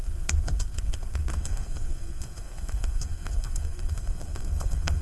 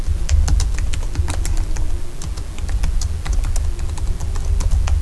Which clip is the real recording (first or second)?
second